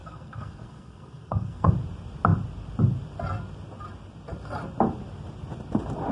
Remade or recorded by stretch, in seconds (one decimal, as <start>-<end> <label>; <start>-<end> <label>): 0.0-1.7 remade; 1.7-6.1 recorded